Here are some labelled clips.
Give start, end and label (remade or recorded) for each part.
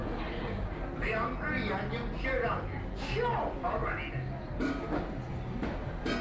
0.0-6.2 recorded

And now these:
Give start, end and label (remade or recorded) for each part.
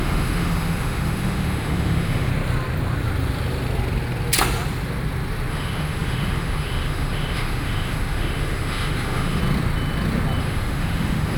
0.0-2.3 remade; 2.3-5.5 recorded; 5.5-9.4 remade; 9.4-10.4 recorded; 10.4-11.4 remade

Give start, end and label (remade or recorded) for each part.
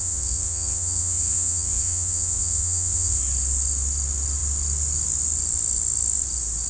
0.0-3.2 remade; 3.2-6.7 recorded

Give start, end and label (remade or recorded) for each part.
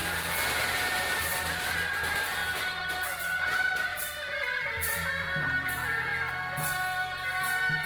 0.0-0.5 recorded; 0.5-6.1 remade; 6.1-7.9 recorded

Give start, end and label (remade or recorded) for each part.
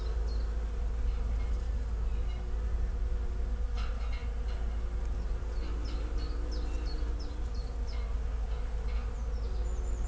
0.0-10.1 recorded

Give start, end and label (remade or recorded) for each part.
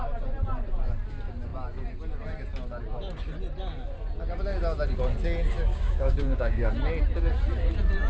0.0-5.7 recorded; 5.7-6.7 remade; 6.7-8.1 recorded